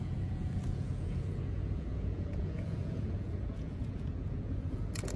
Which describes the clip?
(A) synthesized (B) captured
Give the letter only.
A